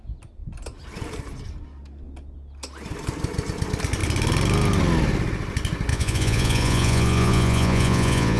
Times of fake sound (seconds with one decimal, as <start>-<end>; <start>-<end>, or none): 5.9-8.4